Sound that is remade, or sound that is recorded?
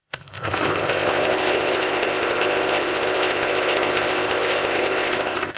remade